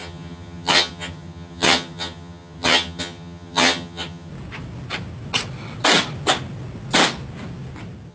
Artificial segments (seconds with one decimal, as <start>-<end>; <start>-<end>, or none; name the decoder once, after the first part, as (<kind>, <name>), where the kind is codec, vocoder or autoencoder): 0.0-4.3 (vocoder, HiFi-GAN)